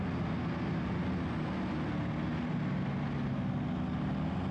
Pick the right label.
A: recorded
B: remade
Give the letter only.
A